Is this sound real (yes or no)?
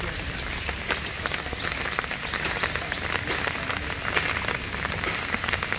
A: yes